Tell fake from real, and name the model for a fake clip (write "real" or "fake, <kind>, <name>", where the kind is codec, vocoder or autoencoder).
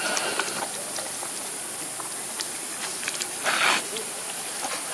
real